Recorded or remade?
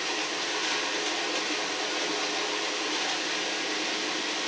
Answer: recorded